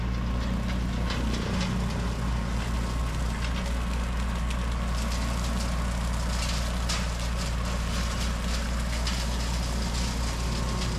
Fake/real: real